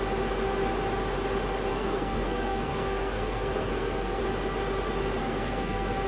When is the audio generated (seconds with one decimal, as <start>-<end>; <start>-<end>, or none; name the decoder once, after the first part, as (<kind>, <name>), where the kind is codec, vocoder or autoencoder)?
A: 1.7-4.2 (codec, SNAC); 5.2-6.1